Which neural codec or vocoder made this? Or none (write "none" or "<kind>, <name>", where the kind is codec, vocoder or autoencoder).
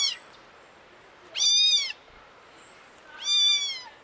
none